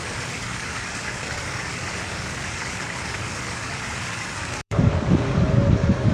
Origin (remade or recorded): remade